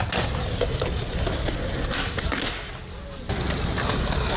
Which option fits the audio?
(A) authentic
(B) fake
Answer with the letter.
A